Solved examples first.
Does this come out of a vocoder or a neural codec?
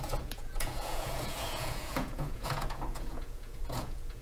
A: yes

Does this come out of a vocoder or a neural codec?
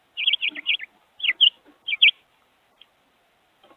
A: no